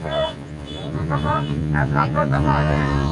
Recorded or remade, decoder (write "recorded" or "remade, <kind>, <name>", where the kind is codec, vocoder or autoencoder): remade, vocoder, Vocos